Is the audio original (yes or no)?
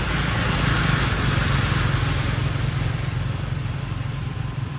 yes